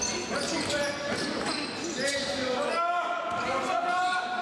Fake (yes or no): no